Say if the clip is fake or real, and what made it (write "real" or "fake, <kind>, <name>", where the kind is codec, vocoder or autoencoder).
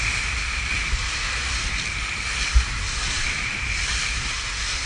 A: real